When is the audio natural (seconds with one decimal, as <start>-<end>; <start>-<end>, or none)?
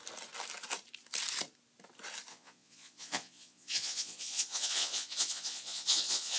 0.0-2.3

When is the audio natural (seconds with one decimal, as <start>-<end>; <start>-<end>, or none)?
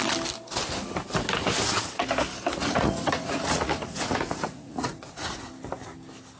0.0-2.5; 5.5-6.4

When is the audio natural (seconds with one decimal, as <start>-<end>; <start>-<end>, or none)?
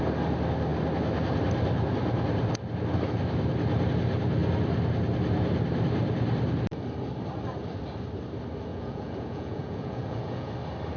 0.0-8.7; 10.5-11.0